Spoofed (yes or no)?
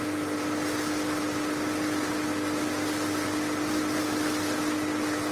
no